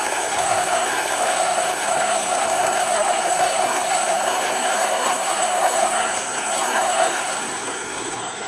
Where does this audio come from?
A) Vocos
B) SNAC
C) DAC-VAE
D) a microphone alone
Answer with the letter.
B